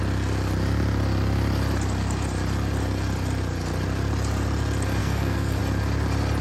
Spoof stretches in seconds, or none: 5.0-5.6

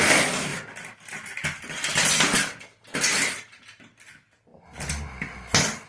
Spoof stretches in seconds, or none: 4.5-5.1

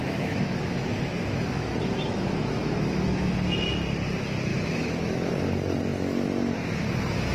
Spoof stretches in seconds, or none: 0.0-3.3; 4.5-5.3

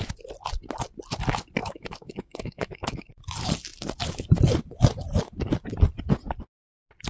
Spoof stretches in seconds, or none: 1.6-3.1

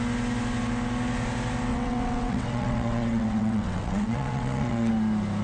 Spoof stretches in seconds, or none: 1.7-4.9